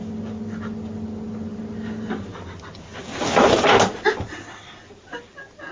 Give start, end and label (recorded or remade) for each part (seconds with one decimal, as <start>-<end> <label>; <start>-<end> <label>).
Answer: 0.0-5.7 recorded